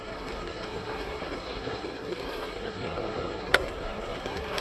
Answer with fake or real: fake